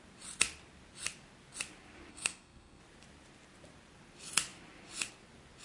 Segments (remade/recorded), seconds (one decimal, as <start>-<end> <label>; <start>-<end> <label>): 0.0-2.1 recorded; 2.1-2.8 remade; 2.8-5.6 recorded

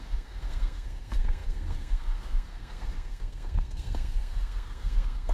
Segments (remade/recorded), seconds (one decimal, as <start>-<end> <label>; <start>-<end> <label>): 0.0-5.3 remade

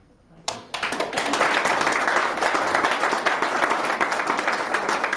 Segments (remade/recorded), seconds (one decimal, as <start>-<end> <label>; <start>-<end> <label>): 0.0-0.7 remade; 0.7-5.2 recorded

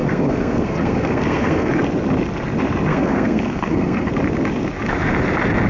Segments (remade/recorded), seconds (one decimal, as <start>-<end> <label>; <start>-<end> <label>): 0.0-1.7 remade; 1.7-2.9 recorded; 2.9-4.1 remade; 4.1-5.7 recorded

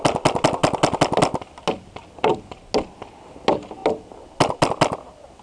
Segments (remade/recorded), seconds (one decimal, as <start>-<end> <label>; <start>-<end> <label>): 0.0-5.4 recorded